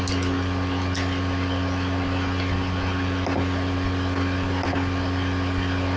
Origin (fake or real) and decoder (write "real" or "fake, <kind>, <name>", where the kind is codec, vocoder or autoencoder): real